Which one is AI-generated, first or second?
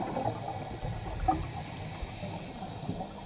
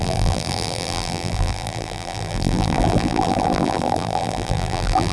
second